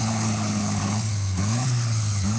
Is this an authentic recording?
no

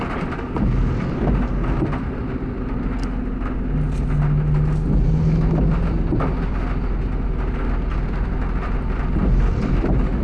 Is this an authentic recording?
yes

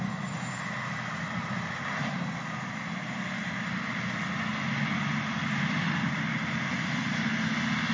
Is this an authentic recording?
yes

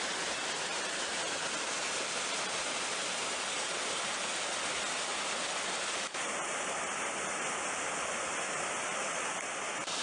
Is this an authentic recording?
yes